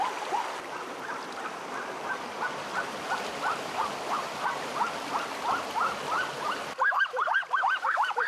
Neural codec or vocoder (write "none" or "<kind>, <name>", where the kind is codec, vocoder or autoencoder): none